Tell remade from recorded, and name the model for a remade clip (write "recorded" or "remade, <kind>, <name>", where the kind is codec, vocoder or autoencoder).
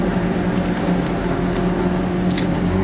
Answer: recorded